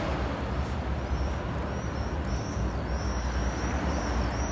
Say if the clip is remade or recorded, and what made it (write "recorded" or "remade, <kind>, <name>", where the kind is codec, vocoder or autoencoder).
recorded